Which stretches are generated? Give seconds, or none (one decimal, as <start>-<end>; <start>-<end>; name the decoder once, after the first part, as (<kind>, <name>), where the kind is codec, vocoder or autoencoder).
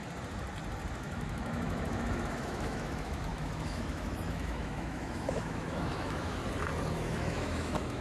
0.9-6.4 (autoencoder, DAC-VAE); 6.9-8.0